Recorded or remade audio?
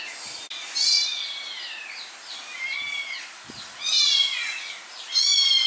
recorded